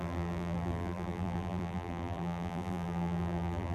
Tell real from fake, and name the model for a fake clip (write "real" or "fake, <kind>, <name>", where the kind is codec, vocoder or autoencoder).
fake, vocoder, BigVGAN v2